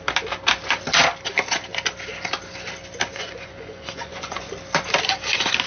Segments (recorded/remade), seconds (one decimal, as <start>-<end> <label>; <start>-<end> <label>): 0.0-3.1 recorded; 3.1-4.5 remade; 4.5-5.7 recorded